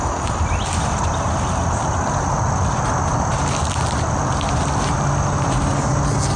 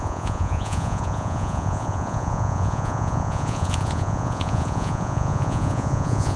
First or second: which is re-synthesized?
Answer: second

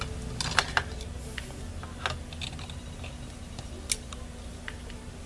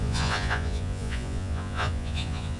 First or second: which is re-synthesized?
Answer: second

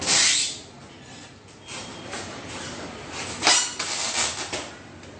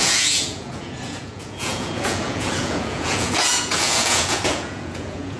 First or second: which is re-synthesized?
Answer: second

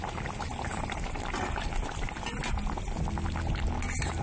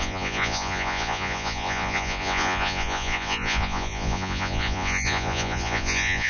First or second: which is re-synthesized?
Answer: second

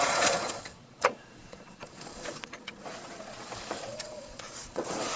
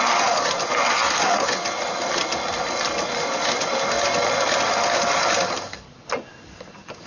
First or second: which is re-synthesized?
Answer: first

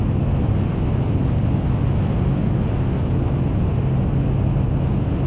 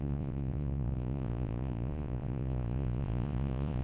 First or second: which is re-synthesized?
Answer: second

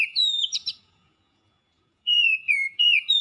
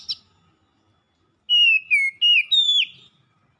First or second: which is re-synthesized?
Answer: first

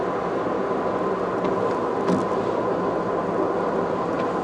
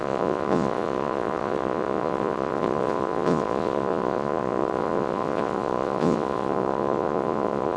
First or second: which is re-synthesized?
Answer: second